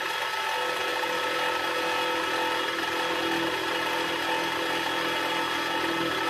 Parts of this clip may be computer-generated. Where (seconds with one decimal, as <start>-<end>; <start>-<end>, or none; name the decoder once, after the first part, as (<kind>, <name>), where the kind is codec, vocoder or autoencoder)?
none